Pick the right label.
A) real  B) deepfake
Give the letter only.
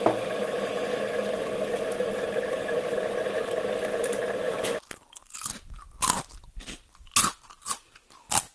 A